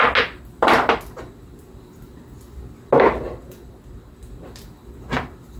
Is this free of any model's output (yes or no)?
yes